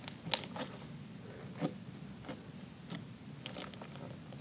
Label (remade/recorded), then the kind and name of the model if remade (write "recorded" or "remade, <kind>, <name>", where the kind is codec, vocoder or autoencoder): recorded